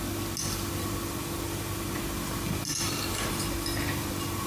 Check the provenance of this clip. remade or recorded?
recorded